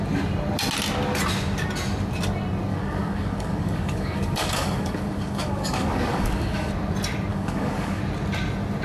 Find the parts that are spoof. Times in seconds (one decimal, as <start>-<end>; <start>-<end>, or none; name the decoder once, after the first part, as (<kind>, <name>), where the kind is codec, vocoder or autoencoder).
2.7-6.7 (codec, DAC); 7.3-8.0